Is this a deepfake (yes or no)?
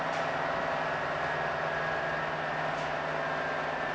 no